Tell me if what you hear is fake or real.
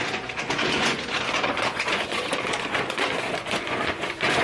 fake